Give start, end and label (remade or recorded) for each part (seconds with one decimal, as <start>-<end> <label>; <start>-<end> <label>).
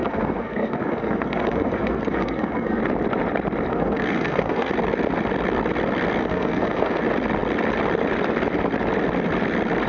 0.0-2.8 remade; 2.8-3.7 recorded; 3.7-4.7 remade; 4.7-6.2 recorded; 6.2-7.0 remade; 7.0-9.9 recorded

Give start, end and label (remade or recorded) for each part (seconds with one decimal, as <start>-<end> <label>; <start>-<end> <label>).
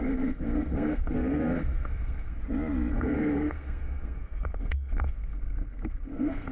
0.0-2.4 remade; 2.4-2.9 recorded; 2.9-6.5 remade